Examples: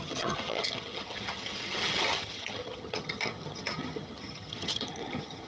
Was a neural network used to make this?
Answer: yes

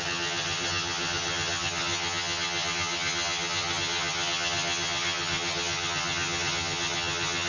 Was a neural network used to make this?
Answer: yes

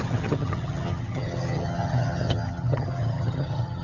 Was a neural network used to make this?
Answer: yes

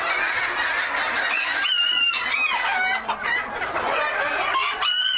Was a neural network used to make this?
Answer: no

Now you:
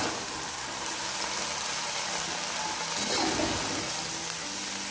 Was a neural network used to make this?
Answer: no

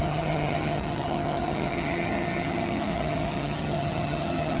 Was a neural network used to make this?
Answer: yes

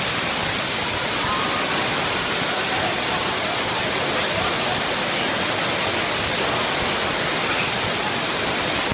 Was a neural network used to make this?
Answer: no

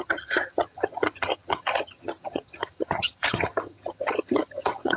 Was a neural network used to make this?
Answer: yes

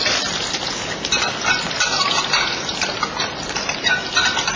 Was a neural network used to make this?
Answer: no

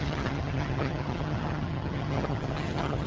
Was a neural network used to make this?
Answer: yes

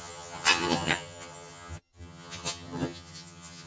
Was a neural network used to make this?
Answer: yes